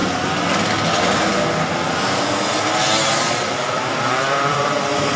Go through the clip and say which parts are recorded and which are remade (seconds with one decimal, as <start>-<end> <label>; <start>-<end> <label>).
0.0-3.1 recorded; 3.1-5.2 remade